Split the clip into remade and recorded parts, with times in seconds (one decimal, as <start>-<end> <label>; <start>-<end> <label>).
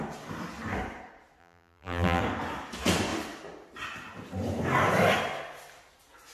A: 0.0-1.4 recorded; 1.4-2.2 remade; 2.2-6.3 recorded